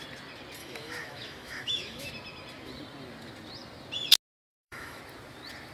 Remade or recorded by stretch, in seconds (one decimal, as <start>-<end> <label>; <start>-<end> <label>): 0.0-0.6 recorded; 0.6-2.1 remade; 2.1-4.5 recorded; 4.5-5.0 remade; 5.0-5.7 recorded